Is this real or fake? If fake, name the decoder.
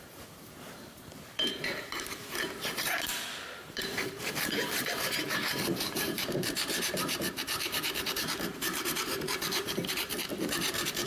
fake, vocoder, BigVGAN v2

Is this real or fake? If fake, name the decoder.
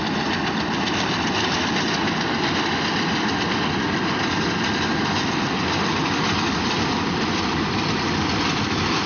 fake, vocoder, BigVGAN v2